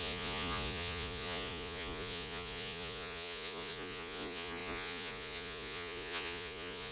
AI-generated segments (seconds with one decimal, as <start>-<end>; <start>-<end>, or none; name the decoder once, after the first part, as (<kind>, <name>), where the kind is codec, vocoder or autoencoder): 0.0-6.9 (vocoder, Vocos)